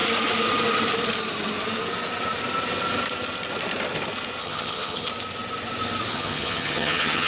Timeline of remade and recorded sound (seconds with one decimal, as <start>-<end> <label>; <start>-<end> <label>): 0.0-4.4 recorded; 4.4-5.1 remade; 5.1-6.1 recorded; 6.1-7.3 remade